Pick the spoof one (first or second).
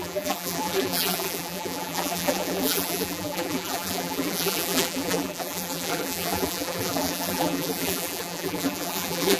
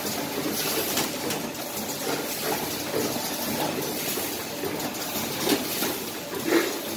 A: first